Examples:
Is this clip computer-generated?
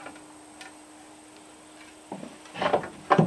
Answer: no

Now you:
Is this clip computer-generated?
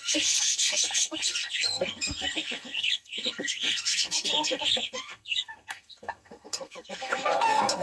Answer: yes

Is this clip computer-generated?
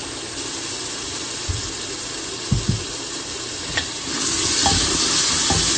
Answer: no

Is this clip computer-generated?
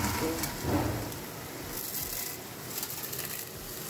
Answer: no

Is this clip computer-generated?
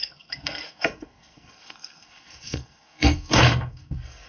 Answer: yes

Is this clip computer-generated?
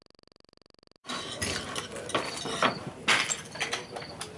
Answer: no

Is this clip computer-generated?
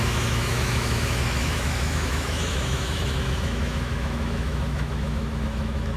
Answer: yes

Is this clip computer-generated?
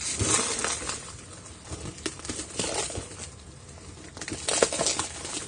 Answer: no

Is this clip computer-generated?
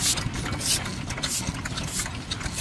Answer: no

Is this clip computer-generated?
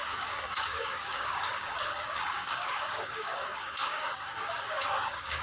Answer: yes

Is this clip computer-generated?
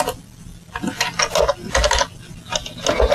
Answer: no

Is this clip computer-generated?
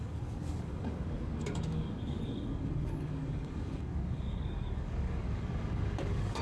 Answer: yes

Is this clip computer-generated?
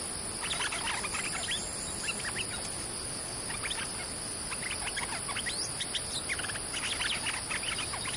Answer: no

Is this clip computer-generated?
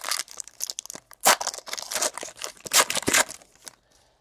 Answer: no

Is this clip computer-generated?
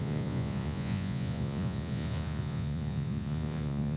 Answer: yes